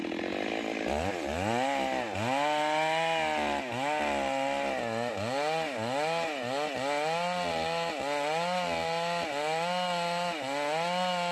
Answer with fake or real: real